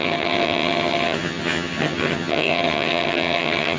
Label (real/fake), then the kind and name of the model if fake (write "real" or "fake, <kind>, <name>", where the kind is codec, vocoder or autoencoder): fake, vocoder, HiFi-GAN